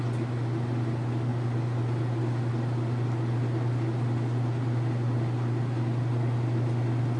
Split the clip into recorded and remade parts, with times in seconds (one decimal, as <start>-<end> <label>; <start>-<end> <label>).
0.0-7.2 recorded